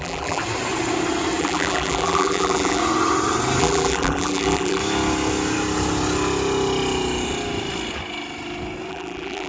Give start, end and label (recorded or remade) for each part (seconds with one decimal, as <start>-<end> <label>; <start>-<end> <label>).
0.0-0.4 remade; 0.4-1.4 recorded; 1.4-2.8 remade; 2.8-3.6 recorded; 3.6-4.8 remade; 4.8-8.9 recorded; 8.9-9.5 remade